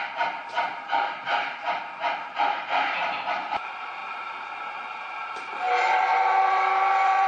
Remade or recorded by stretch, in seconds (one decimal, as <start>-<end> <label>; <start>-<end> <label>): 0.0-4.0 remade; 4.0-5.0 recorded; 5.0-7.3 remade